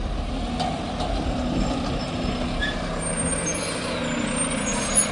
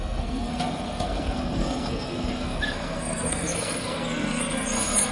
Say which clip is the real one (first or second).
first